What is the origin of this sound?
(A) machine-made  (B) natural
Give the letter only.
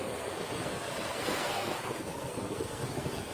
A